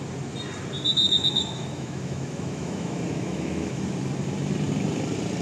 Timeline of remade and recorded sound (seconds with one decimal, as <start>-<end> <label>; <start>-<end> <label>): 0.0-0.9 recorded; 0.9-3.8 remade; 3.8-5.4 recorded